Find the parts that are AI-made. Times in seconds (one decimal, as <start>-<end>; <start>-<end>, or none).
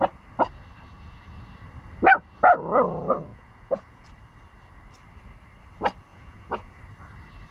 3.3-4.1; 6.1-6.8